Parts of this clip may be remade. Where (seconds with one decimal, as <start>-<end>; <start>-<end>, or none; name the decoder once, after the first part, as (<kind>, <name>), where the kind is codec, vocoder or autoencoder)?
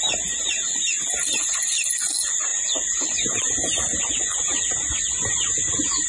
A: none